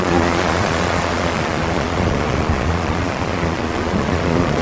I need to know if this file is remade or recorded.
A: remade